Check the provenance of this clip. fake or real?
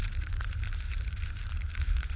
fake